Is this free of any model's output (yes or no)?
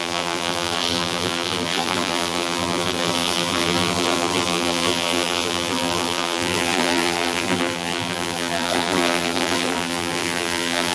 no